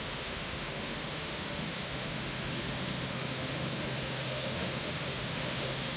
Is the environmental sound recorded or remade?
remade